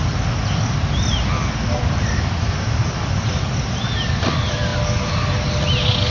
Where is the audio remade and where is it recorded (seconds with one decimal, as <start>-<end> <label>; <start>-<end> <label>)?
0.0-6.1 recorded